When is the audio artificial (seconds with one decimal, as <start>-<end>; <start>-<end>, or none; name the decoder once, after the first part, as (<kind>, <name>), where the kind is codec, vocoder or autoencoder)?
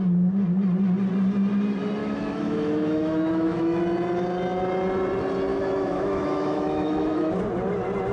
2.0-3.8 (autoencoder, DAC-VAE); 5.5-7.4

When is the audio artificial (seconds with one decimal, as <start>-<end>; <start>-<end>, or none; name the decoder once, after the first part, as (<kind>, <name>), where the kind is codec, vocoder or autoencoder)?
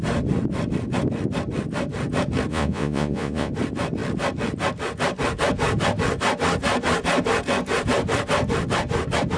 2.5-3.5 (vocoder, Vocos)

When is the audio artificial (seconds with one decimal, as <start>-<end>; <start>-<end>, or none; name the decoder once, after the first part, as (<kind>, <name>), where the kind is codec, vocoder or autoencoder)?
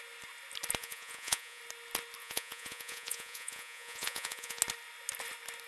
0.8-1.6 (vocoder, Vocos); 2.2-4.6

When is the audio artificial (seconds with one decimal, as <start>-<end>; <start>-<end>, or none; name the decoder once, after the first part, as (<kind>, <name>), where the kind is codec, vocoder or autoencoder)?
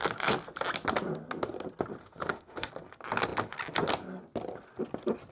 2.0-2.7 (autoencoder, DAC-VAE)